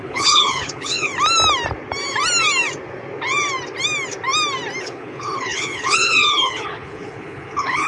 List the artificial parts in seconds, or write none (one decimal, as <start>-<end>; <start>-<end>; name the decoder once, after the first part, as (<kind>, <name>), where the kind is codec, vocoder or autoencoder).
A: 0.0-1.1 (codec, HILCodec); 4.8-7.9